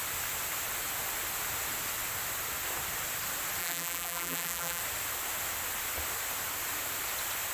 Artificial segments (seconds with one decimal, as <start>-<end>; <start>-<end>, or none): 3.6-4.8